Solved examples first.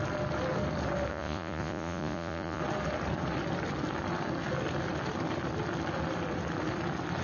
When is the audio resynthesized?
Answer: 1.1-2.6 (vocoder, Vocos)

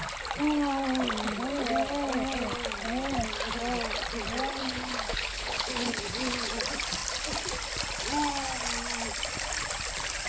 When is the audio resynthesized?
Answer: 4.6-6.5 (codec, HILCodec)

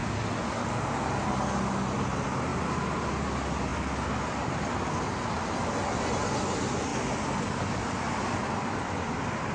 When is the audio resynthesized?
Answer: none